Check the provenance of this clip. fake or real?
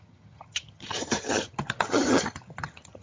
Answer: fake